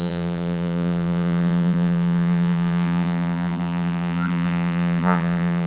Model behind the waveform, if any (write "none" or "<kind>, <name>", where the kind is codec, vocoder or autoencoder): vocoder, BigVGAN v2